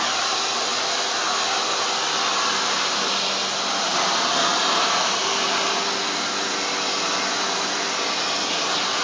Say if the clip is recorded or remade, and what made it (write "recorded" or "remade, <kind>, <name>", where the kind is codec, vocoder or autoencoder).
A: recorded